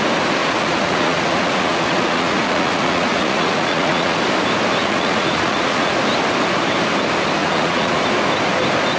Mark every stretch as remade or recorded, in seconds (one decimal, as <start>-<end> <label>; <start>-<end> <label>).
0.0-0.4 recorded; 0.4-4.2 remade; 4.2-4.8 recorded; 4.8-5.9 remade; 5.9-7.4 recorded; 7.4-8.0 remade; 8.0-9.0 recorded